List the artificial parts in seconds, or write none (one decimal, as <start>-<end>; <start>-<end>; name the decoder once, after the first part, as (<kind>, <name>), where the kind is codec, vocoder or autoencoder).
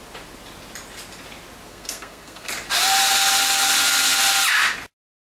1.7-2.5 (codec, SNAC)